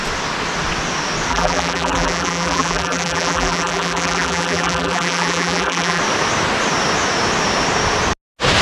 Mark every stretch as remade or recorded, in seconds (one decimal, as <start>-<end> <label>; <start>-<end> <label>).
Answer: 0.0-1.3 recorded; 1.3-6.0 remade; 6.0-8.6 recorded

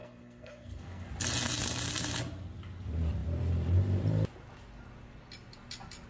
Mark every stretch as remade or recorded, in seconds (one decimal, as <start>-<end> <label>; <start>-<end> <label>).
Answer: 0.0-1.1 remade; 1.1-6.1 recorded

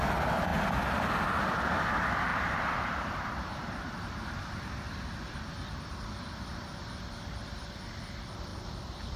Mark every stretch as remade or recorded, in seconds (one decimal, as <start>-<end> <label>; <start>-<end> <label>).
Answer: 0.0-0.5 recorded; 0.5-1.2 remade; 1.2-2.3 recorded; 2.3-6.0 remade; 6.0-8.5 recorded; 8.5-9.2 remade

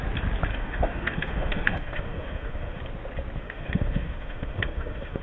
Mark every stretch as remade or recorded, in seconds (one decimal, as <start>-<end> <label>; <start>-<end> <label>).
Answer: 0.0-0.5 recorded; 0.5-2.8 remade; 2.8-3.4 recorded; 3.4-5.2 remade